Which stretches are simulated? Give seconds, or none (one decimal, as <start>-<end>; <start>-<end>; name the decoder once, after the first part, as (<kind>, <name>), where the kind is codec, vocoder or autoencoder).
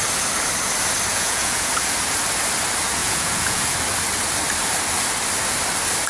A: 1.1-1.7 (vocoder, Vocos); 3.0-3.6